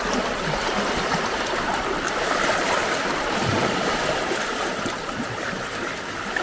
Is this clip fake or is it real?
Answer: real